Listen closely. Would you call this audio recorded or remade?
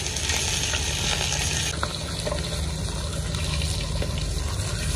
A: recorded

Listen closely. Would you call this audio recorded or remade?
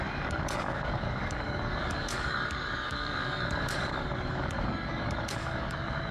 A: remade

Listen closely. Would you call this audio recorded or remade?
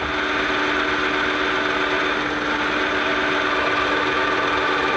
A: recorded